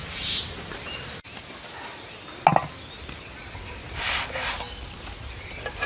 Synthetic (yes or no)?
no